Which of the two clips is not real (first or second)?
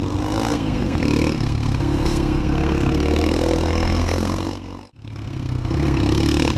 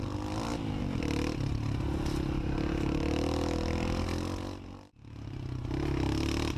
first